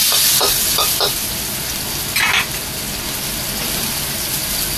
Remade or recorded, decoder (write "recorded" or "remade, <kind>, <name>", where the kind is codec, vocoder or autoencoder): recorded